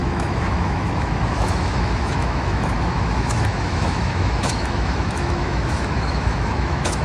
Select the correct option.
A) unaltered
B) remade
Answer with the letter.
B